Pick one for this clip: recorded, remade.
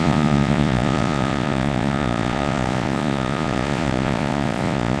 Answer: remade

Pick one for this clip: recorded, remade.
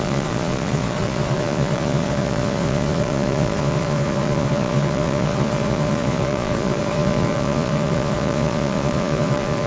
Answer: remade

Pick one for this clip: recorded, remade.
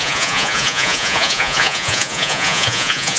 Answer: remade